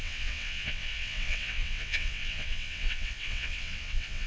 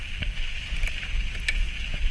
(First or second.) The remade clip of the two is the first